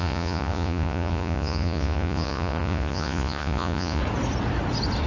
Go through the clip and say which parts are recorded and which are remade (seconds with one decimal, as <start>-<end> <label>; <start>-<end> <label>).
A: 0.0-4.0 remade; 4.0-5.1 recorded